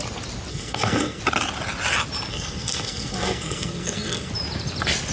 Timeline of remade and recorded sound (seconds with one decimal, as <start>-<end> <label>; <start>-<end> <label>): 0.0-0.5 recorded; 0.5-1.2 remade; 1.2-2.3 recorded; 2.3-4.3 remade; 4.3-5.1 recorded